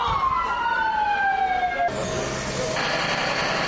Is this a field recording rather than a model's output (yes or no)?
yes